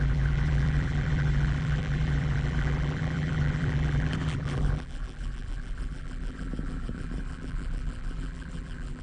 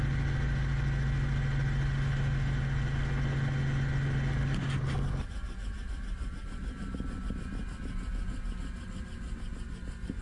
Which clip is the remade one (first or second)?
first